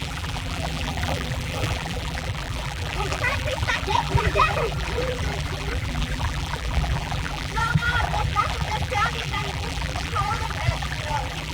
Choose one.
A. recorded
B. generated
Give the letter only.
B